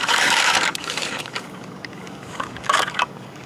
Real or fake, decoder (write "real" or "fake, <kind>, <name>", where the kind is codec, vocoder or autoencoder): fake, codec, DAC